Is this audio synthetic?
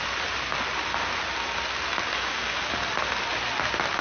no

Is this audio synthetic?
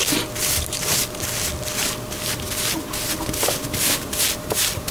no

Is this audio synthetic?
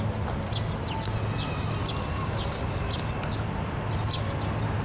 no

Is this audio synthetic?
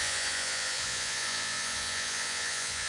yes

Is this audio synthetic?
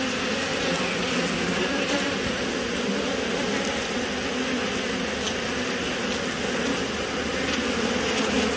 no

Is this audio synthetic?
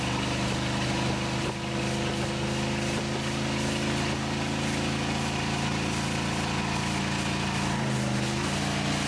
no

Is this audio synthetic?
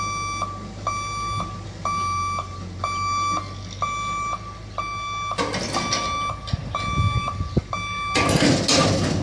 no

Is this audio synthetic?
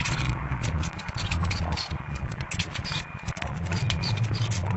yes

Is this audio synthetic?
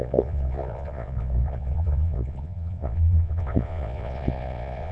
yes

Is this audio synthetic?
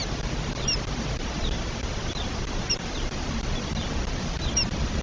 no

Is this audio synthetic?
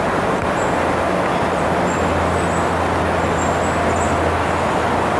no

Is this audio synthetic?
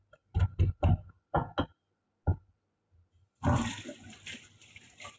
no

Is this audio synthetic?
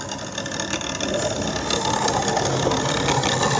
no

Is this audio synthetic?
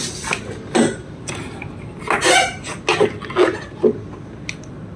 no